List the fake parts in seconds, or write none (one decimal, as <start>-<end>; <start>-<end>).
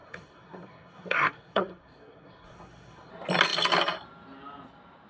0.0-3.1